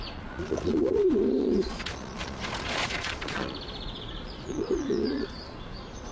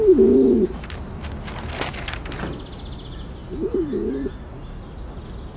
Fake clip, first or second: first